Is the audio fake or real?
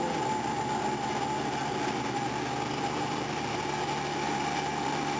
real